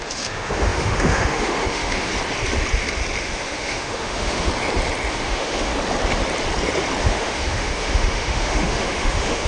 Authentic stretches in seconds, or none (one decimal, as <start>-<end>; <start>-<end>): 2.1-3.2; 4.5-5.1; 5.7-7.0